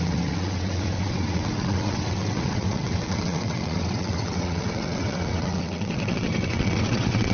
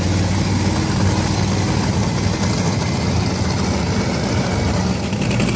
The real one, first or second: second